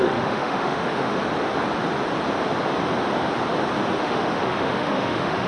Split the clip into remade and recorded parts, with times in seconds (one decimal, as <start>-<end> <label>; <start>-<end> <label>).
0.0-1.2 remade; 1.2-4.0 recorded; 4.0-5.5 remade